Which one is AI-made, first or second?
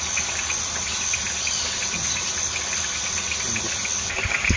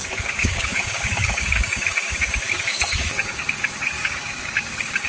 second